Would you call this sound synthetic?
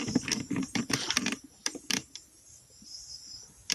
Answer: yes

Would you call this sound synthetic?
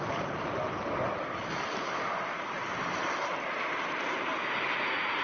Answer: yes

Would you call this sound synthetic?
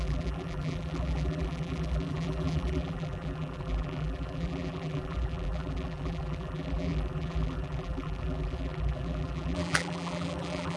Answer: yes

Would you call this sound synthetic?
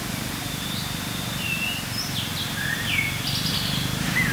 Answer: no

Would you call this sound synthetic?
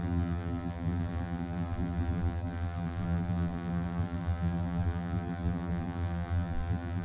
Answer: yes